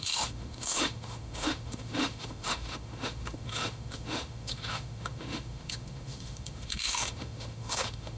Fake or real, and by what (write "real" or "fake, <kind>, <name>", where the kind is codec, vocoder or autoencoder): fake, autoencoder, DAC-VAE